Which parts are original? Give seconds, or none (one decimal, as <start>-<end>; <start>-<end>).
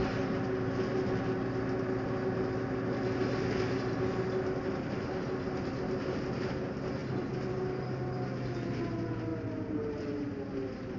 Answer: 0.0-11.0